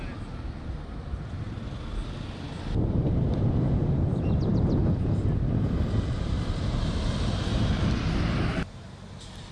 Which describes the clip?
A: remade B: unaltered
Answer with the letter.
B